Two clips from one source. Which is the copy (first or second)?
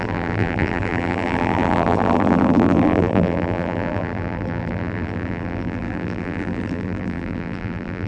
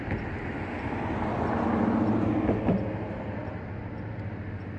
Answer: first